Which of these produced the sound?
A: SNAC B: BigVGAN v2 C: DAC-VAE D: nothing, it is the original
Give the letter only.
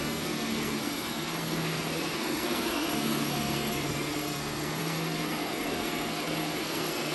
A